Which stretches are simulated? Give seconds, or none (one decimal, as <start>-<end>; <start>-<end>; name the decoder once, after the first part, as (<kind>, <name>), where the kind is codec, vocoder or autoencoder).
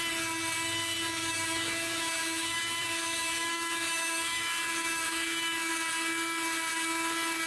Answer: 1.2-5.7 (autoencoder, DAC-VAE)